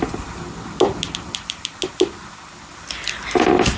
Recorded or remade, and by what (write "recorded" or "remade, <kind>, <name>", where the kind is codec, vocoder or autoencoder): recorded